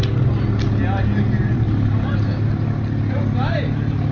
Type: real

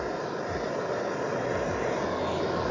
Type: real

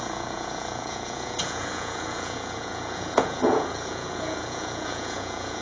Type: fake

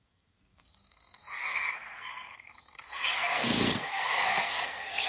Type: fake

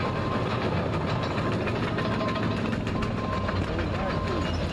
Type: real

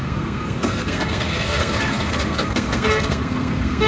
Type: fake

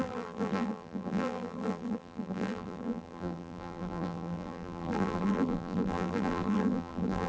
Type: fake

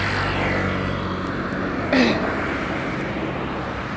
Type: real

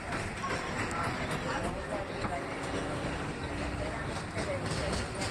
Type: real